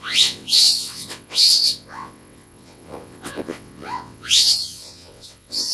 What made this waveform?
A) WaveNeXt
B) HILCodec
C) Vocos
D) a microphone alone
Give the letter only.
A